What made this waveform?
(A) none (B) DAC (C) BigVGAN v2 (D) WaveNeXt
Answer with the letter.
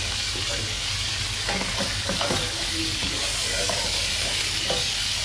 B